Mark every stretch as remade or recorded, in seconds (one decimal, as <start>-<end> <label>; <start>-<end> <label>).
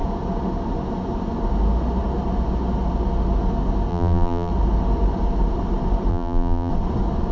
0.0-3.9 recorded; 3.9-4.5 remade; 4.5-6.1 recorded; 6.1-6.7 remade; 6.7-7.3 recorded